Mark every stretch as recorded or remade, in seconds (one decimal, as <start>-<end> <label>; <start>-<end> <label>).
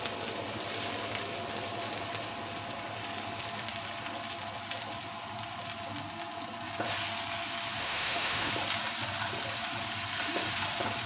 0.0-7.8 recorded; 7.8-8.5 remade; 8.5-11.1 recorded